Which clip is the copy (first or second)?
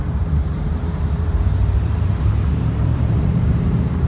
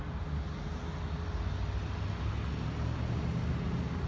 first